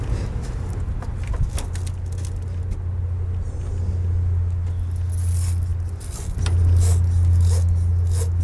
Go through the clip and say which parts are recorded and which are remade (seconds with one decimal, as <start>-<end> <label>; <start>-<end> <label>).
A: 0.0-8.4 recorded